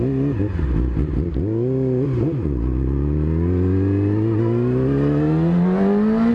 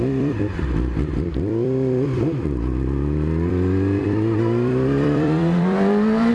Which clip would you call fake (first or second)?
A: second